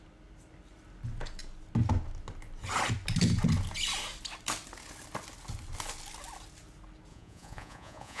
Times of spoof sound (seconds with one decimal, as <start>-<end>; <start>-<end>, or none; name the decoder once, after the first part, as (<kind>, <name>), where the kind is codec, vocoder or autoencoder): 7.1-8.2 (vocoder, Vocos)